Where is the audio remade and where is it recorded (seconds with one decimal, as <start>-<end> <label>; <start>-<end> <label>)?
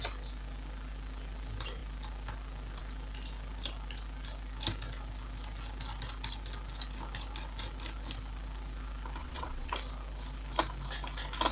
0.0-9.2 recorded; 9.2-9.7 remade; 9.7-11.5 recorded